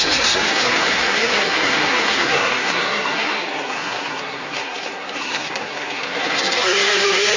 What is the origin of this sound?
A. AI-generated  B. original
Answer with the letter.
A